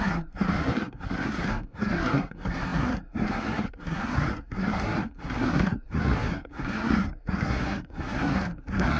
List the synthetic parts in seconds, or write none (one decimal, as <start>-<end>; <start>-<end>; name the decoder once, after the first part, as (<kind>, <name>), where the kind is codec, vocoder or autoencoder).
0.0-9.0 (codec, SNAC)